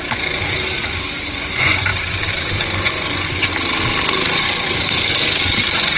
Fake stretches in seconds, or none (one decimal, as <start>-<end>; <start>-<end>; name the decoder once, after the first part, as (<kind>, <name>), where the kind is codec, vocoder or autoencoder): 0.0-1.9 (vocoder, Vocos); 2.6-3.5; 5.6-6.0